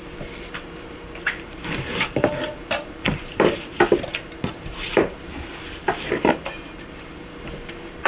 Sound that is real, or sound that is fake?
fake